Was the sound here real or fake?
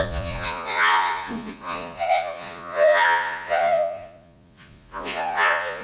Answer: fake